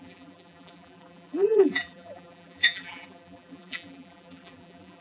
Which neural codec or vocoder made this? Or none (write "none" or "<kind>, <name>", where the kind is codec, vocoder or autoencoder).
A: vocoder, BigVGAN v2